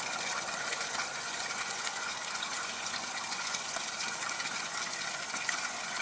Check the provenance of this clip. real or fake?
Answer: fake